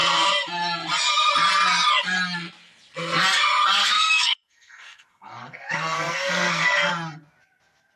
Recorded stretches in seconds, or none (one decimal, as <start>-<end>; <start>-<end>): 0.0-3.8; 6.9-8.0